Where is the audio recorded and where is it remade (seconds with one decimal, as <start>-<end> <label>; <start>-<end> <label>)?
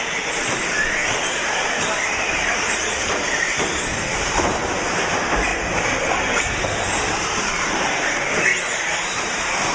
0.0-5.5 remade; 5.5-6.4 recorded; 6.4-8.5 remade; 8.5-9.1 recorded; 9.1-9.7 remade